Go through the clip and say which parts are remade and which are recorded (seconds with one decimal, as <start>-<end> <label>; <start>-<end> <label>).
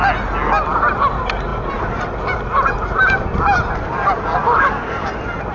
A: 0.0-4.4 recorded; 4.4-5.1 remade; 5.1-5.5 recorded